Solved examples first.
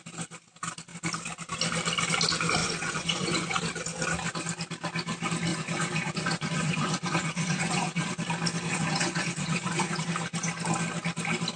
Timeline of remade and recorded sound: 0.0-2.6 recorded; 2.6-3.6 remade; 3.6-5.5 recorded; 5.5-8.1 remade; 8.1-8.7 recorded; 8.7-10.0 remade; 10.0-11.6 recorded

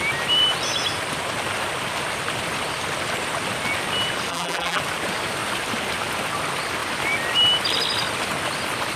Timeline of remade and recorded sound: 0.0-4.3 recorded; 4.3-4.8 remade; 4.8-9.0 recorded

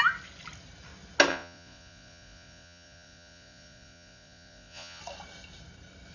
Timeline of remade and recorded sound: 0.0-1.3 recorded; 1.3-5.0 remade; 5.0-6.1 recorded

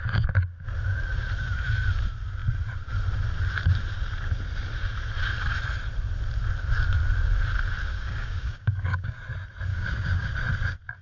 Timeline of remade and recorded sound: 0.0-7.9 recorded; 7.9-9.2 remade; 9.2-9.7 recorded; 9.7-10.3 remade; 10.3-11.0 recorded